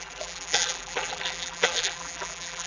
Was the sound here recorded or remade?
remade